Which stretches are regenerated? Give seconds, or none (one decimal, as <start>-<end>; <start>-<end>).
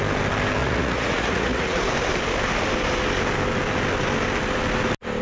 0.6-1.8